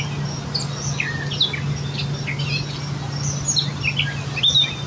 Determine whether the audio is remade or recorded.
recorded